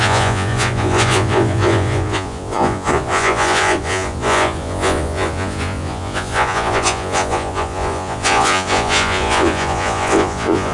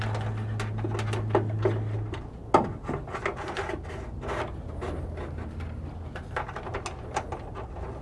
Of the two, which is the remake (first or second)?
first